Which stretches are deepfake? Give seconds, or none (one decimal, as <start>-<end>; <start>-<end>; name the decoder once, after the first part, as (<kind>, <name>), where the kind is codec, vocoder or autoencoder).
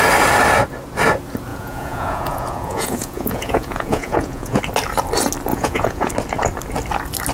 1.5-4.6 (vocoder, Vocos); 5.5-6.1